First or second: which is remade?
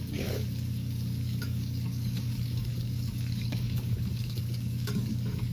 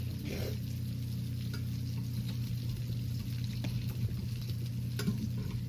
first